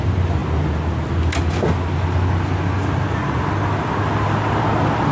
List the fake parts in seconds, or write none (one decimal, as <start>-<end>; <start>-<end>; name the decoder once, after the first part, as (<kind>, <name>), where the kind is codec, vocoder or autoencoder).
none